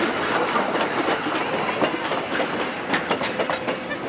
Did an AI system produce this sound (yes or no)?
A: no